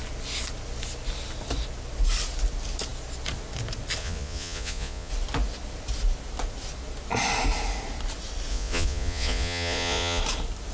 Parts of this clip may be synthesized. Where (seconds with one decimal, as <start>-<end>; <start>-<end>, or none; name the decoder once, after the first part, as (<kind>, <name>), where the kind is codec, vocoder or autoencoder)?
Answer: 4.0-5.1 (vocoder, Vocos); 8.5-10.2